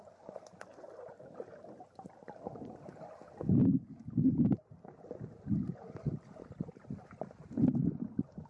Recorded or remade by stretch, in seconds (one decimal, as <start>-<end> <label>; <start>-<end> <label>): 0.0-8.5 recorded